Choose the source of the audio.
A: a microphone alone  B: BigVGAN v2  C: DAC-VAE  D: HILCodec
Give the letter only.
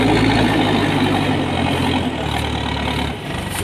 A